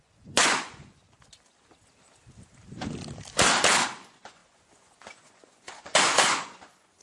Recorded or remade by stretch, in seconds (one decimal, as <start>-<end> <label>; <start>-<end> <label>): 0.0-1.0 remade; 1.0-4.0 recorded; 4.0-7.0 remade